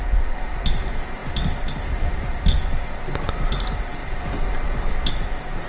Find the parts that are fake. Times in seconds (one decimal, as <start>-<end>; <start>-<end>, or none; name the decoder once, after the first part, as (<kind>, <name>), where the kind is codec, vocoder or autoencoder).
none